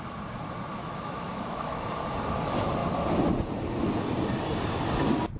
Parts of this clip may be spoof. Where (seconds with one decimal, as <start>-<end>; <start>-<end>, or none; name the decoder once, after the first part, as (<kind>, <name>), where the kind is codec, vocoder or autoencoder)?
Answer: 0.8-1.8 (autoencoder, DAC-VAE)